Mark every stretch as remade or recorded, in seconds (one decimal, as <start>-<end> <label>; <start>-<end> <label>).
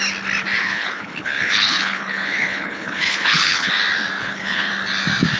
0.0-0.6 recorded; 0.6-3.7 remade; 3.7-4.2 recorded; 4.2-4.7 remade; 4.7-5.4 recorded